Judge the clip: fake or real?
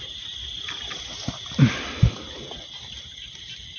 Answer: real